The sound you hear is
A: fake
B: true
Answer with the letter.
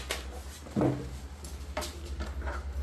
B